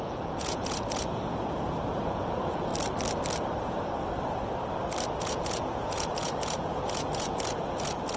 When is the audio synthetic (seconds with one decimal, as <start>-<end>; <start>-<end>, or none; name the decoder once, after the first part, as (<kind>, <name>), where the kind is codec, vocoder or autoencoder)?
0.0-2.7 (vocoder, Vocos); 5.2-8.2